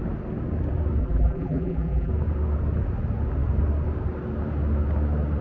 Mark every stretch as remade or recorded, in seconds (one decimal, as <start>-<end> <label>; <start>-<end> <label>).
0.0-1.0 recorded; 1.0-2.1 remade; 2.1-5.4 recorded